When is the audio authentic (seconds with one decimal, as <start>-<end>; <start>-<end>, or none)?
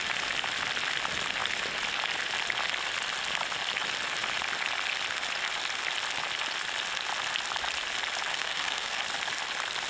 0.0-8.3; 9.0-9.9